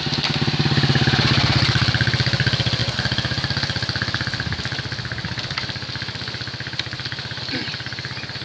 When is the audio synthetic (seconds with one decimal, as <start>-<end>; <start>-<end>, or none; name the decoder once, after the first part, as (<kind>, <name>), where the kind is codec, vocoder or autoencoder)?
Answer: 0.0-2.8 (vocoder, BigVGAN v2); 7.4-8.4